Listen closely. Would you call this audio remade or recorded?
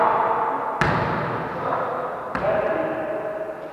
recorded